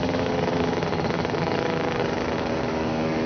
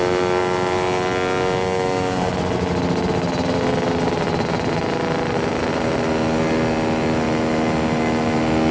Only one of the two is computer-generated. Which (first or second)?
first